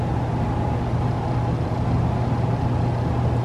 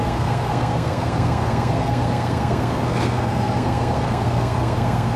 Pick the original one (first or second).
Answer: first